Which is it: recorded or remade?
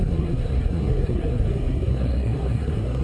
remade